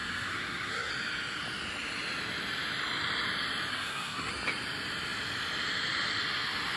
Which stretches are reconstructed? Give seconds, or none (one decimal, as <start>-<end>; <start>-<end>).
0.0-0.9; 3.7-4.3